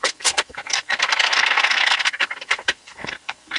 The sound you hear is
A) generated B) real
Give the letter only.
A